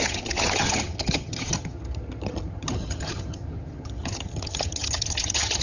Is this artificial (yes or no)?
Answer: yes